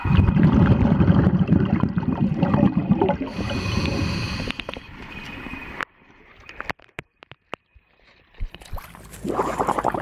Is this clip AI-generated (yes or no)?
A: no